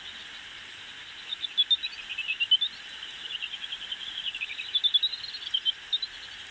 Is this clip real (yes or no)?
yes